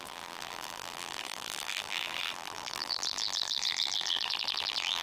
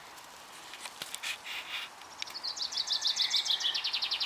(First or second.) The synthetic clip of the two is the first